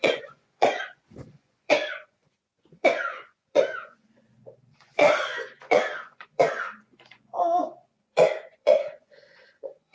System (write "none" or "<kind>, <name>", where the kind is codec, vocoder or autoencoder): vocoder, Vocos